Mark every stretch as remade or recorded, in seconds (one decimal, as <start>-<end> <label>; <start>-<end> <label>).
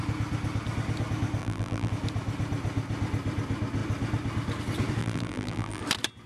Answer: 0.0-1.4 recorded; 1.4-1.9 remade; 1.9-5.0 recorded; 5.0-5.8 remade; 5.8-6.3 recorded